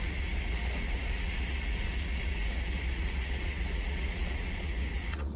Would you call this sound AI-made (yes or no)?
yes